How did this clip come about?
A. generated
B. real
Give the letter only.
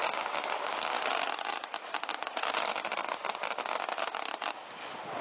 B